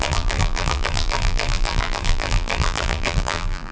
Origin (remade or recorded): remade